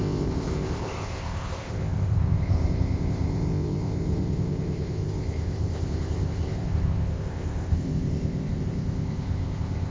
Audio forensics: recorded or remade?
remade